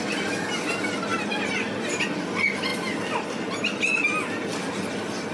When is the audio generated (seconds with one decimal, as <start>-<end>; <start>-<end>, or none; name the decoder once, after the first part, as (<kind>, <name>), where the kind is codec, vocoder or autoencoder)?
none